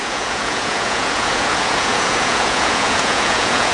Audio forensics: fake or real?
fake